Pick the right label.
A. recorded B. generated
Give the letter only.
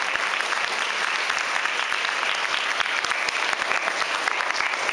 A